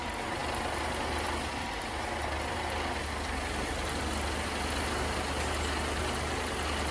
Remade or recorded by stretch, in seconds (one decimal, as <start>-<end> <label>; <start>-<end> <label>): 0.0-6.9 recorded